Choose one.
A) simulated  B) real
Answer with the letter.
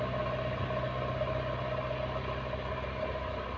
B